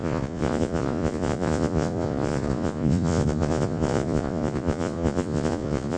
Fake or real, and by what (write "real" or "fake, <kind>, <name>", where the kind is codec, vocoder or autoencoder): fake, vocoder, Vocos